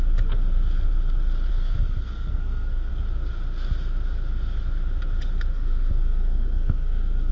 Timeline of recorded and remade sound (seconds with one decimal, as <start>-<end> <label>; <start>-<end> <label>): 0.0-1.5 recorded; 1.5-2.9 remade; 2.9-5.5 recorded; 5.5-7.3 remade